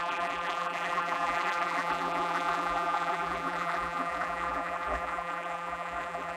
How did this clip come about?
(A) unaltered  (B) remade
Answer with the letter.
B